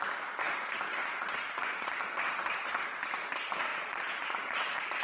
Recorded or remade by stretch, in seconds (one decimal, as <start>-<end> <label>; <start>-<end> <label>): 0.0-1.0 recorded; 1.0-2.4 remade; 2.4-3.7 recorded; 3.7-5.0 remade